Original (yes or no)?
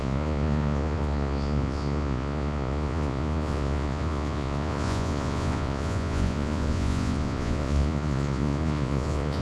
no